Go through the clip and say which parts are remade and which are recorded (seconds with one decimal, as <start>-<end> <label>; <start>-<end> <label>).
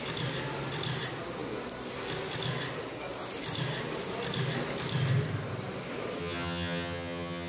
0.0-6.2 recorded; 6.2-7.5 remade